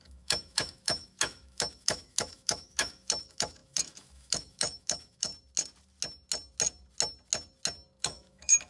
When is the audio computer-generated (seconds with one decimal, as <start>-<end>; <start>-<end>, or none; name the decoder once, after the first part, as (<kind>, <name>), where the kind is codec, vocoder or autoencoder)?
0.0-5.3 (autoencoder, DAC-VAE); 8.0-8.7